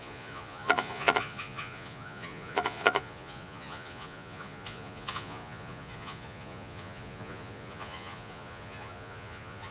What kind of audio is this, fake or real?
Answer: fake